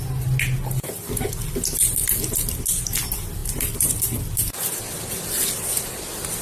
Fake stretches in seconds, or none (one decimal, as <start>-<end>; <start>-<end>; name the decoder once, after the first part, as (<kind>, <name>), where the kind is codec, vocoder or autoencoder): 3.4-4.2 (vocoder, BigVGAN v2)